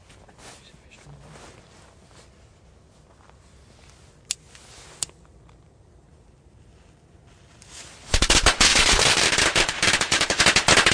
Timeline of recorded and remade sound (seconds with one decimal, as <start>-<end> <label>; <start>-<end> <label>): 0.0-8.7 recorded; 8.7-10.4 remade; 10.4-10.9 recorded